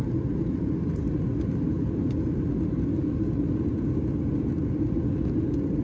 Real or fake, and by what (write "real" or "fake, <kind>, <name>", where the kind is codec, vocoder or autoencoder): real